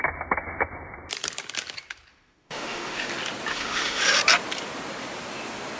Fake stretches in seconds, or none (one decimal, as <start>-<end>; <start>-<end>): 2.1-3.1; 3.5-4.0